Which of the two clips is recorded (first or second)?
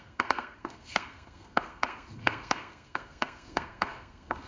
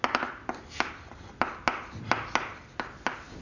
second